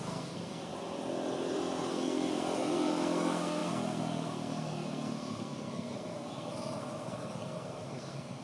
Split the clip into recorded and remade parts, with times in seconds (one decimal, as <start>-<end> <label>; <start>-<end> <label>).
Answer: 0.0-0.7 remade; 0.7-1.9 recorded; 1.9-8.4 remade